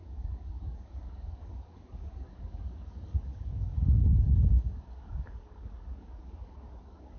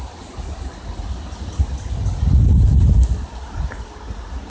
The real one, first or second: second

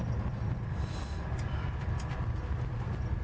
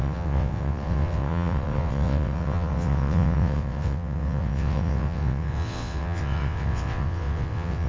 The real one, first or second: first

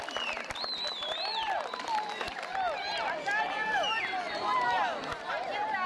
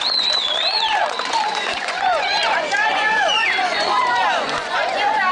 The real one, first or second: first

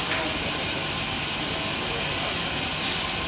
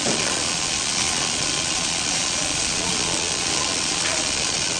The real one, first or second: first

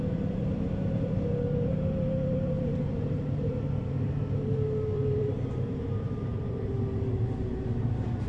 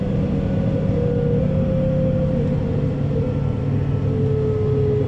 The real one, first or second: second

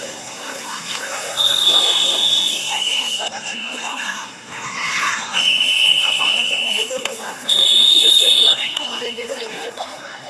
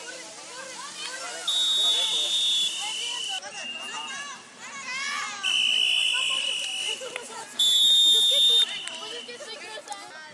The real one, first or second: second